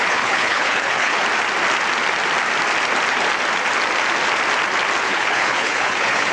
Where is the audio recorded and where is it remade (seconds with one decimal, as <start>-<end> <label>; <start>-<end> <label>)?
0.0-1.2 remade; 1.2-5.0 recorded; 5.0-6.3 remade